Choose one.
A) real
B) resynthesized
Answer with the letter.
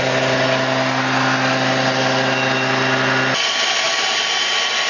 A